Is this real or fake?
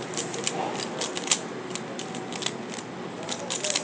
real